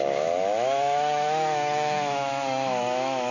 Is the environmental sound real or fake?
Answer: fake